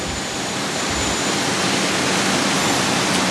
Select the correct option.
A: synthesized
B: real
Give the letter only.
B